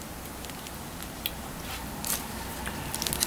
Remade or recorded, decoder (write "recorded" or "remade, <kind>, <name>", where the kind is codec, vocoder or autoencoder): recorded